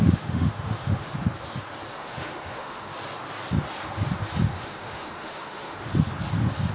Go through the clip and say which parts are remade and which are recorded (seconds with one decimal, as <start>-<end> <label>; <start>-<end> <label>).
0.0-1.1 remade; 1.1-1.9 recorded; 1.9-2.9 remade; 2.9-4.4 recorded; 4.4-5.9 remade; 5.9-6.7 recorded